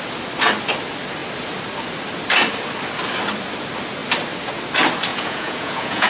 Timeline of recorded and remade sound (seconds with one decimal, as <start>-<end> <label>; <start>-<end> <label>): 0.0-5.1 recorded; 5.1-6.1 remade